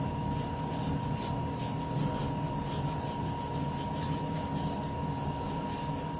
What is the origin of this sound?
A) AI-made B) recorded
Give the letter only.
B